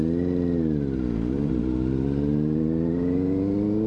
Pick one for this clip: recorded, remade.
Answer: recorded